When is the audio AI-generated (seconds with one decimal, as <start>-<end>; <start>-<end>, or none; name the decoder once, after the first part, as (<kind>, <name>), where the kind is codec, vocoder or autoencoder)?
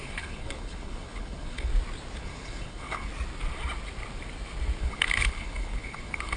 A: 0.0-1.7 (codec, HILCodec); 2.2-3.1; 4.8-6.4